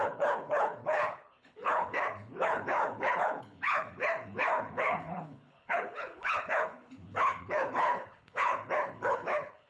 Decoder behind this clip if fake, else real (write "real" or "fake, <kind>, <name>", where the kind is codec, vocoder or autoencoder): fake, codec, HILCodec